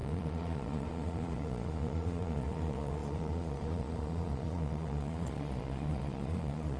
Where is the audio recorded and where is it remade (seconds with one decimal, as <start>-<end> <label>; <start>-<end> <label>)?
0.0-6.8 remade